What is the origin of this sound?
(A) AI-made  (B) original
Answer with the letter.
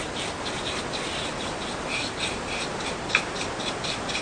B